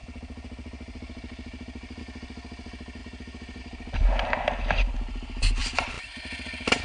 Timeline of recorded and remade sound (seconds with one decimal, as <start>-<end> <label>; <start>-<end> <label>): 0.0-2.0 remade; 2.0-5.6 recorded; 5.6-6.8 remade